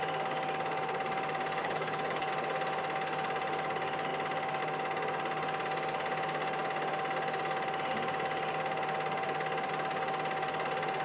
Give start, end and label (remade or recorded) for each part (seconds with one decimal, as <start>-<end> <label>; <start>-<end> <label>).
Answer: 0.0-1.6 recorded; 1.6-2.3 remade; 2.3-11.0 recorded